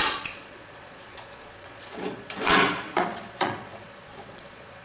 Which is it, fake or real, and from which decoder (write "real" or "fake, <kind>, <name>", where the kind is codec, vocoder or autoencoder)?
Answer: fake, vocoder, Vocos